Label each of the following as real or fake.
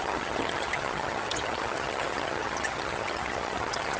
fake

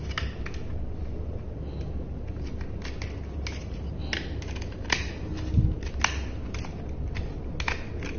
real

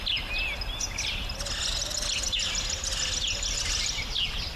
real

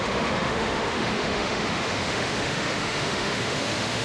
fake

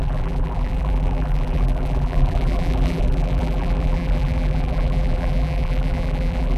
fake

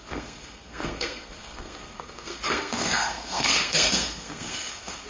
fake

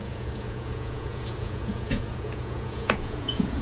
fake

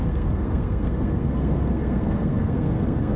fake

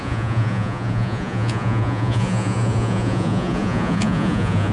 fake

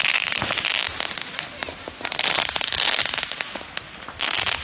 real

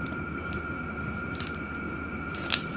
real